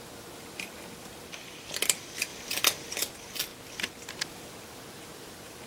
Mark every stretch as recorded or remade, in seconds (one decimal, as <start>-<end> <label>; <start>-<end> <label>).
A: 0.0-2.3 remade; 2.3-3.0 recorded; 3.0-3.5 remade; 3.5-4.2 recorded; 4.2-5.7 remade